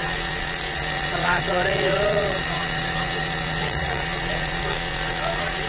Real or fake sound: fake